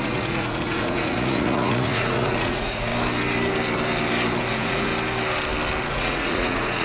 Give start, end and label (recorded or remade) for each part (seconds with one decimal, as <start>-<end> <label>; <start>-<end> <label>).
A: 0.0-2.9 remade; 2.9-4.4 recorded; 4.4-4.9 remade; 4.9-5.8 recorded; 5.8-6.8 remade